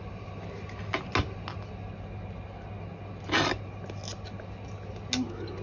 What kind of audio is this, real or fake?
real